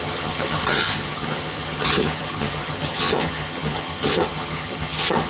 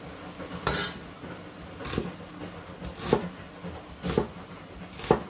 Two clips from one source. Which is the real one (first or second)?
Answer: second